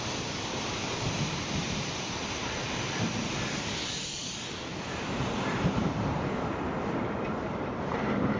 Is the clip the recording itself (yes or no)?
no